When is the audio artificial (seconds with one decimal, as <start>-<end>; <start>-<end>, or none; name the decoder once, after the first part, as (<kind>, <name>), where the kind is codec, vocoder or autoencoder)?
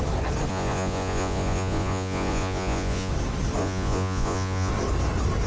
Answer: 0.5-3.1 (vocoder, Vocos); 3.6-4.7